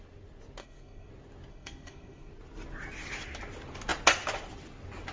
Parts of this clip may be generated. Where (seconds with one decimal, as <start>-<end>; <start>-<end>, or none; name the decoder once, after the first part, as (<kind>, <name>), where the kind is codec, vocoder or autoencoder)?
0.6-1.1 (codec, SNAC); 1.5-2.3